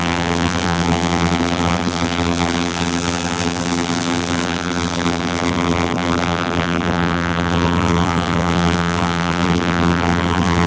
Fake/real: fake